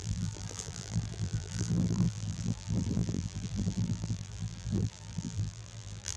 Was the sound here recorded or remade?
remade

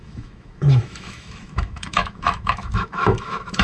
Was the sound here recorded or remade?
remade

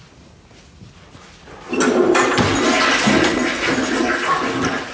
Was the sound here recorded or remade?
recorded